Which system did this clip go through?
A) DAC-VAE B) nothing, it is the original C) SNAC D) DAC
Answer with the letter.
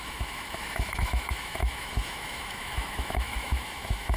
A